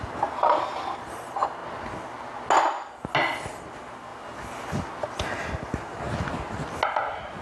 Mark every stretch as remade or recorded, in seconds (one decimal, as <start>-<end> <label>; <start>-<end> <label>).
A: 0.0-7.4 recorded